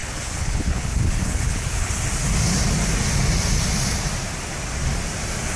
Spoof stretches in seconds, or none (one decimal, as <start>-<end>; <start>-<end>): 0.0-1.9